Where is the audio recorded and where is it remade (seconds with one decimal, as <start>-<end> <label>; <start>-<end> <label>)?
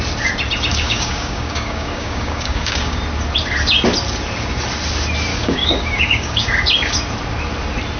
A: 0.0-0.7 recorded; 0.7-3.0 remade; 3.0-5.3 recorded; 5.3-6.5 remade; 6.5-8.0 recorded